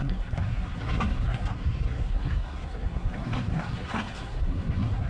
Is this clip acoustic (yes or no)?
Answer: no